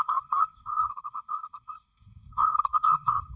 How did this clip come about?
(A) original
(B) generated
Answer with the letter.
B